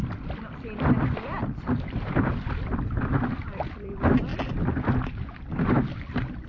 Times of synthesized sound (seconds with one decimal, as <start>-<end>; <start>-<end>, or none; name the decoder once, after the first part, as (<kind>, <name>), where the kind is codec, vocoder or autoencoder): 0.0-3.4 (vocoder, BigVGAN v2)